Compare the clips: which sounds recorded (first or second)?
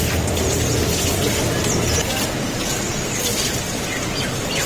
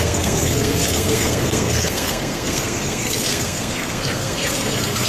first